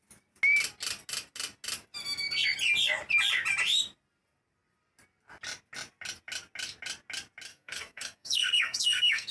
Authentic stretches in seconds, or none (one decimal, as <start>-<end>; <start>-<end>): 0.0-7.5